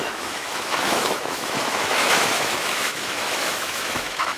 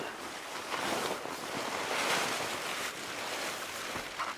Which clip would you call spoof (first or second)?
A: first